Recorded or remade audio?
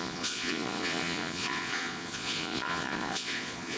remade